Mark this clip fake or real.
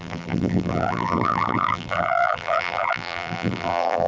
fake